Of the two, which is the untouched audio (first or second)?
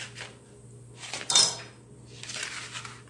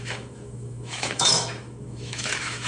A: first